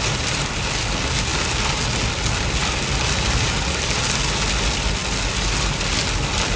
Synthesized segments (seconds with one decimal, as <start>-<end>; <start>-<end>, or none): none